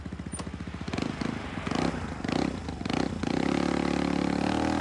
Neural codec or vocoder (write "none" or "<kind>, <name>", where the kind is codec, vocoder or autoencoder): none